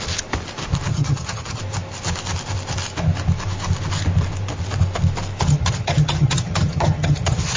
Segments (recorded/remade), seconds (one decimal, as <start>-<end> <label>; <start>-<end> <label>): 0.0-0.9 recorded; 0.9-1.6 remade; 1.6-5.5 recorded; 5.5-7.6 remade